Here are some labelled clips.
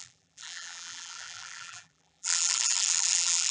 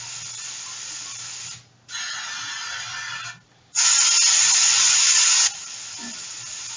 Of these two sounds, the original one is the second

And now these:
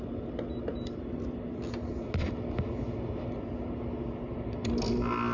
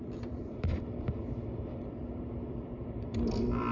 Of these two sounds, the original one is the first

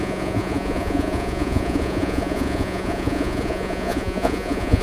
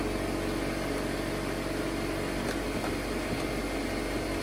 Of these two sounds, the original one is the second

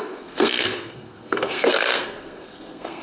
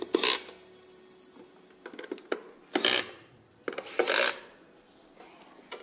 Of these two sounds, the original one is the second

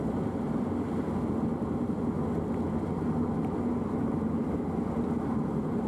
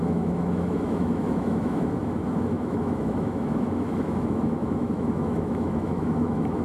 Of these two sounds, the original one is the first